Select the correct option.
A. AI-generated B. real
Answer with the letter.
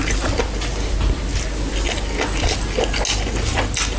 B